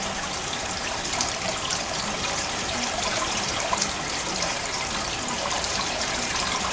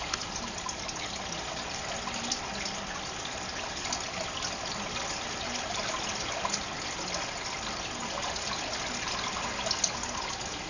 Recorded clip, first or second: second